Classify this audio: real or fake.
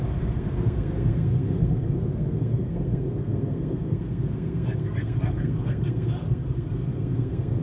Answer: fake